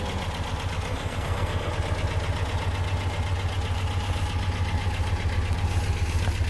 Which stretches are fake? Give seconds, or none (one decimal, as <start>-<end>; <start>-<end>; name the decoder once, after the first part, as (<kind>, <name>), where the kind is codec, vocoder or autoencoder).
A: 0.9-1.7 (codec, SNAC)